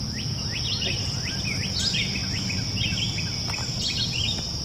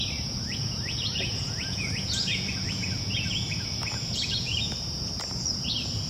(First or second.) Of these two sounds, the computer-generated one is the second